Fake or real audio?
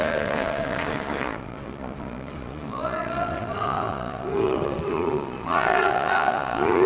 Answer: fake